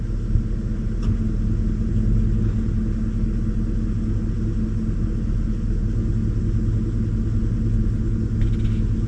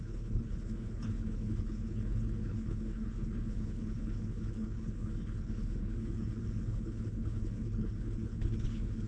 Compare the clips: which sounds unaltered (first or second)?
first